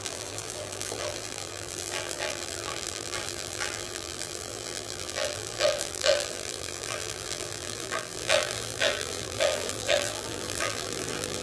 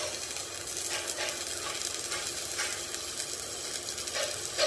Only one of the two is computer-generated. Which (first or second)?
first